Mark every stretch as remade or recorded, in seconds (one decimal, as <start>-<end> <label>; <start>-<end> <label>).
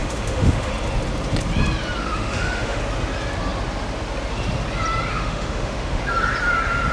0.0-0.7 remade; 0.7-2.0 recorded; 2.0-2.8 remade; 2.8-5.1 recorded; 5.1-6.0 remade; 6.0-6.9 recorded